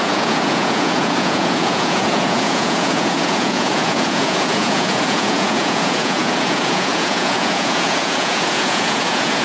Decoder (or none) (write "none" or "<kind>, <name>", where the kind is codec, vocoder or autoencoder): vocoder, Vocos